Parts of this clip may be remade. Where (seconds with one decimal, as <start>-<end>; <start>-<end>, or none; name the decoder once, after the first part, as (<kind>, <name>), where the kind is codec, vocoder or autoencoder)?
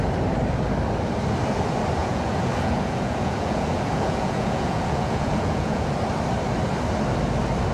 2.0-6.0 (vocoder, Vocos)